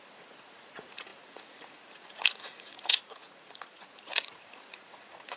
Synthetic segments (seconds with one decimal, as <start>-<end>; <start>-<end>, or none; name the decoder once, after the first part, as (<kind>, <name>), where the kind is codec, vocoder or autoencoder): 0.0-5.4 (vocoder, Vocos)